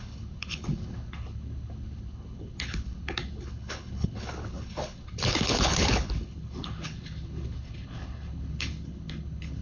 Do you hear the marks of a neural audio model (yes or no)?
yes